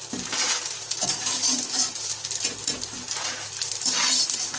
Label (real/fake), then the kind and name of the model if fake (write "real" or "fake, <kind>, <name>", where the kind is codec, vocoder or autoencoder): real